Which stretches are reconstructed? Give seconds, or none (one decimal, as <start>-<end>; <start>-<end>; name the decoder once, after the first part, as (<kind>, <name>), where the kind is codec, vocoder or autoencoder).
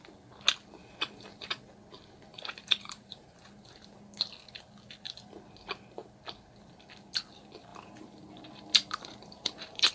0.8-1.5 (vocoder, BigVGAN v2); 2.3-4.0; 7.7-9.9